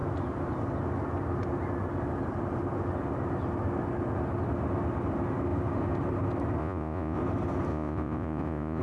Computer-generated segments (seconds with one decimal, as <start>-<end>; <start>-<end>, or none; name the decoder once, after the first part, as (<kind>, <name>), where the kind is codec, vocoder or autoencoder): 6.6-7.2 (vocoder, Vocos); 7.7-8.8